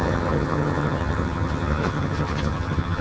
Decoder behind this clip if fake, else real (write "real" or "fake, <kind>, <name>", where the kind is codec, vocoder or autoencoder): fake, vocoder, HiFi-GAN